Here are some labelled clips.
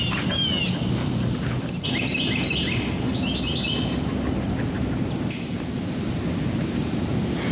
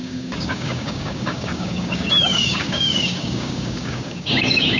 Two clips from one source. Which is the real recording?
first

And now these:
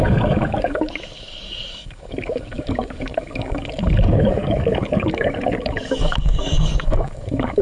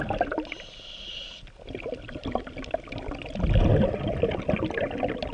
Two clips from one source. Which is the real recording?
second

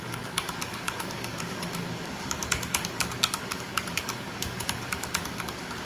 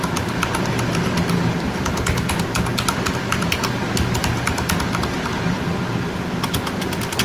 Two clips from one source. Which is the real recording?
second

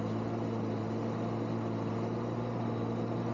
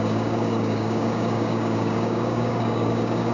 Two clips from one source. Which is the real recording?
first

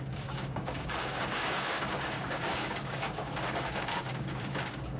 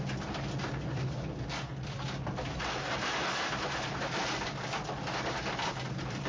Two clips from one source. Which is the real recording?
second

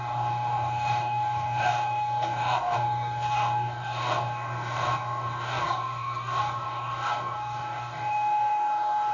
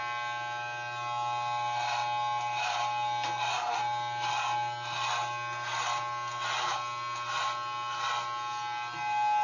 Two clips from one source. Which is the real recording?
second